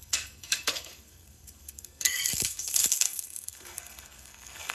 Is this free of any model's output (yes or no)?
no